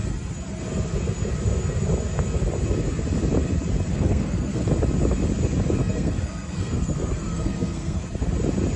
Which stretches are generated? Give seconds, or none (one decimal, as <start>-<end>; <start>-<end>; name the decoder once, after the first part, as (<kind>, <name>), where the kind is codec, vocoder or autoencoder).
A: 3.9-4.7 (codec, SNAC); 5.8-8.0